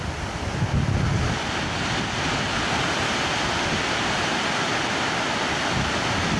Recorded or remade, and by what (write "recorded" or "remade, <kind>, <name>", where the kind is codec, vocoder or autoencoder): recorded